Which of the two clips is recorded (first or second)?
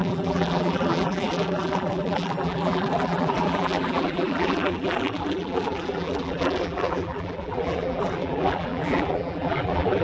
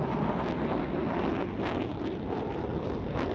second